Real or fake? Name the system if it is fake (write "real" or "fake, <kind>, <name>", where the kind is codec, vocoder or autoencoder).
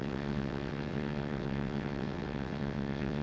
fake, vocoder, WaveNeXt